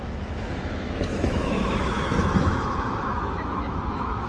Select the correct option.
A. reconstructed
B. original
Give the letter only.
A